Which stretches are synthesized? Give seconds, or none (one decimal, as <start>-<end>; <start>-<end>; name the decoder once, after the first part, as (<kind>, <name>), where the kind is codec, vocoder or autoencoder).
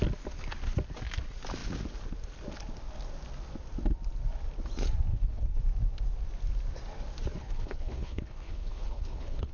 5.1-5.6 (codec, HILCodec); 7.4-9.5